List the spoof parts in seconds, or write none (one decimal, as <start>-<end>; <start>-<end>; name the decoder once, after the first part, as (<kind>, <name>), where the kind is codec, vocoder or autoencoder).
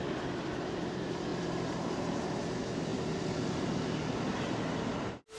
none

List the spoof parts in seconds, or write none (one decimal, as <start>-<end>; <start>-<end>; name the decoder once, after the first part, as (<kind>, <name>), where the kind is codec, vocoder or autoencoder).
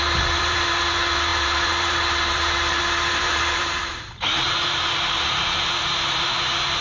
0.0-6.8 (vocoder, BigVGAN v2)